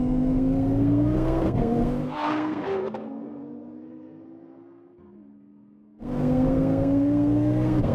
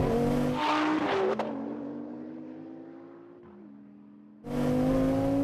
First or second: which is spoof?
first